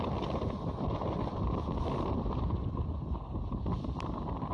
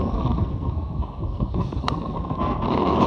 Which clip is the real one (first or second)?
first